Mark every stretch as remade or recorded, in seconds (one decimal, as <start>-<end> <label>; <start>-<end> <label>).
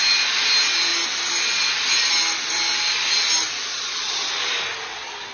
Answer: 0.0-3.7 recorded; 3.7-4.3 remade; 4.3-5.3 recorded